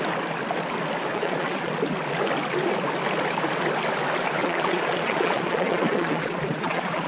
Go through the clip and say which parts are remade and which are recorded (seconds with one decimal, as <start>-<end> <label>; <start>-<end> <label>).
0.0-1.1 recorded; 1.1-1.7 remade; 1.7-4.4 recorded; 4.4-7.1 remade